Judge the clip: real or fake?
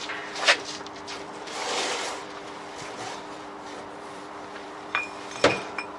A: fake